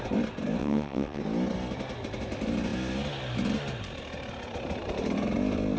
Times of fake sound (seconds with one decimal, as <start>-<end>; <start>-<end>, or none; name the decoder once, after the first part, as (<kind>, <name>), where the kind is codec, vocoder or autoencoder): 0.6-1.2 (vocoder, WaveNeXt)